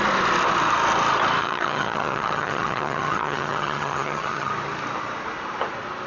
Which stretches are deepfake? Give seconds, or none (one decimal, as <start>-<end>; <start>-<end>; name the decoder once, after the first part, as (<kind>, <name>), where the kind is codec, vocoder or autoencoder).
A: 1.4-4.5 (vocoder, HiFi-GAN)